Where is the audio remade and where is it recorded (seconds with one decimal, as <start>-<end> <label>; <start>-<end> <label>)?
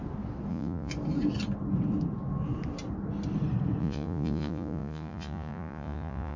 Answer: 0.0-0.5 recorded; 0.5-0.9 remade; 0.9-3.8 recorded; 3.8-6.4 remade